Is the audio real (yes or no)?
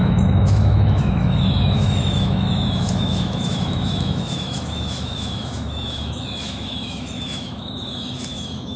no